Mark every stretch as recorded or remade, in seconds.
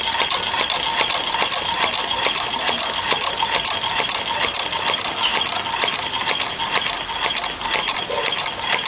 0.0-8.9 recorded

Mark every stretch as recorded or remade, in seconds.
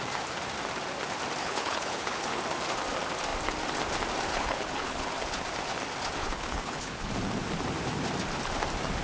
0.0-1.4 recorded; 1.4-2.4 remade; 2.4-4.3 recorded; 4.3-5.1 remade; 5.1-6.2 recorded; 6.2-7.1 remade; 7.1-9.0 recorded